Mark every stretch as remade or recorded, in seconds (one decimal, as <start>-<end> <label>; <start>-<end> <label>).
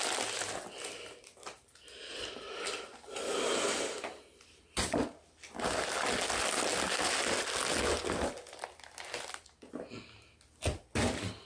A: 0.0-11.5 recorded